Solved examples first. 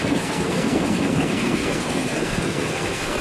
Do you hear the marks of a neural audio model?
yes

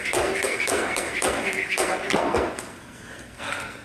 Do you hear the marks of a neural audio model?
yes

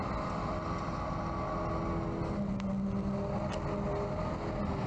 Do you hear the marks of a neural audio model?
no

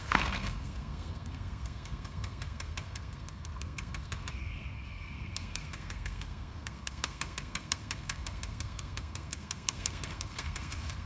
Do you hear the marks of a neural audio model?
yes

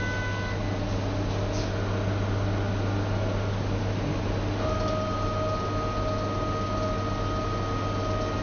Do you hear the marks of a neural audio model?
no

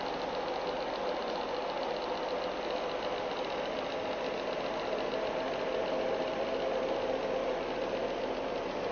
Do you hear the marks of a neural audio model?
no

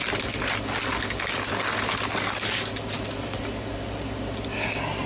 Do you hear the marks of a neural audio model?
no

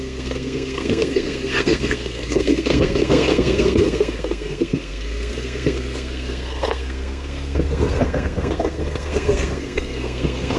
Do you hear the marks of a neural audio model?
yes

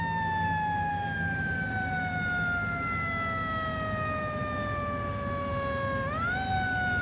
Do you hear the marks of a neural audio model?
no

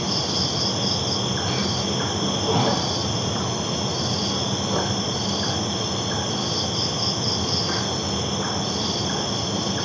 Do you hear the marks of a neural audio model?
no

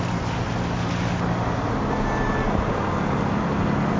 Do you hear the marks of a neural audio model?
no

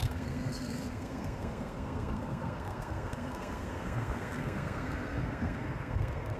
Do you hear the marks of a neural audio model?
yes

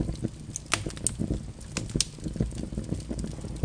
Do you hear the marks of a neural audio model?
no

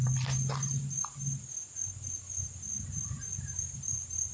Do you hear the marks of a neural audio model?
no